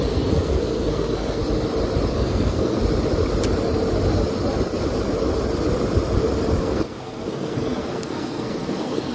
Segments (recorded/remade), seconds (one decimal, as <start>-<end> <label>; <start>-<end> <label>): 0.0-1.4 remade; 1.4-2.1 recorded; 2.1-2.8 remade; 2.8-6.6 recorded; 6.6-9.1 remade